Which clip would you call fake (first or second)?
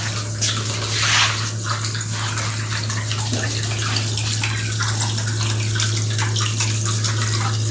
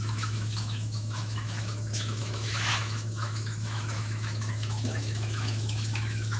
second